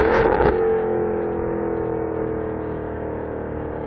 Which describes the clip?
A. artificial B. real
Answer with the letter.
A